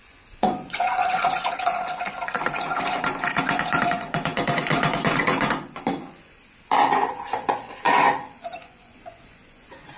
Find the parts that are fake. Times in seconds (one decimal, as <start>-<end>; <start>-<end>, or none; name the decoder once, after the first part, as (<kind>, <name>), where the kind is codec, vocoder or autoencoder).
0.0-10.0 (vocoder, Vocos)